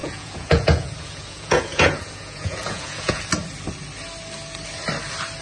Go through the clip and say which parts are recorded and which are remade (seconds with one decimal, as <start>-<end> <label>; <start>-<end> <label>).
0.0-3.2 remade; 3.2-5.4 recorded